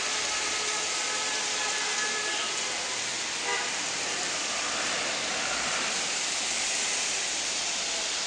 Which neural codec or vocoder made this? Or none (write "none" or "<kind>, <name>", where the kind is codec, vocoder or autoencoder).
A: vocoder, BigVGAN v2